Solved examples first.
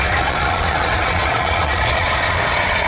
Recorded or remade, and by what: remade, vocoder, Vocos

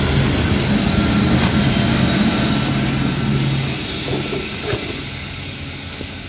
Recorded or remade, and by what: recorded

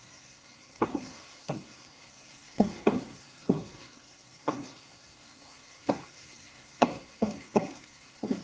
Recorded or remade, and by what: remade, codec, SNAC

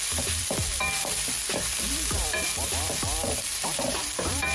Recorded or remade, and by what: remade, vocoder, BigVGAN v2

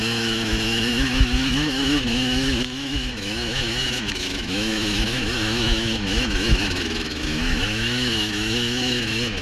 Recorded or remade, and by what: remade, autoencoder, DAC-VAE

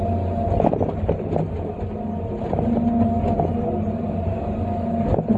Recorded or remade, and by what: recorded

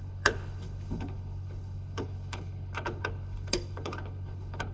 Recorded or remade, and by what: remade, codec, HILCodec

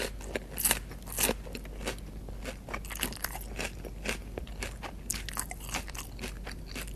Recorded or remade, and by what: recorded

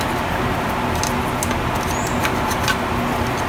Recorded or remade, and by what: recorded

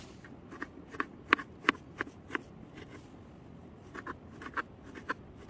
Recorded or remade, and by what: recorded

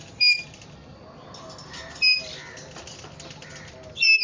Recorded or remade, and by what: recorded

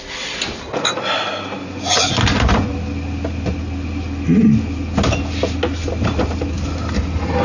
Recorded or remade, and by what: recorded